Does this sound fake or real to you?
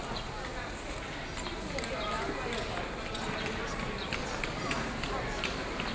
real